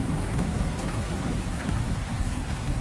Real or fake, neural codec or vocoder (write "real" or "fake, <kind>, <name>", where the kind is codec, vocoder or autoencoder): fake, codec, SNAC